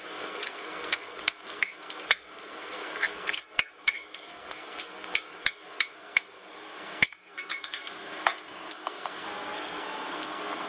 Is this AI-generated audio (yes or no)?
yes